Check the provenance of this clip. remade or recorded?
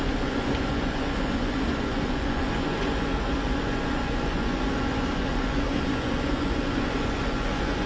remade